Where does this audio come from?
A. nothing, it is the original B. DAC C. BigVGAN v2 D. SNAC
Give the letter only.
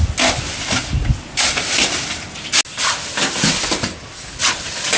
A